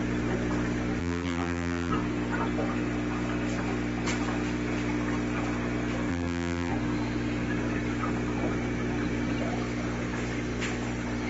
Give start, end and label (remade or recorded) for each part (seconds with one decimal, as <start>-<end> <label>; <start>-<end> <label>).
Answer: 0.0-1.0 recorded; 1.0-1.9 remade; 1.9-6.1 recorded; 6.1-6.7 remade; 6.7-11.3 recorded